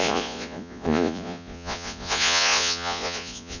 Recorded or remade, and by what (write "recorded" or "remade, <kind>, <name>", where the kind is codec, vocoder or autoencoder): remade, vocoder, Vocos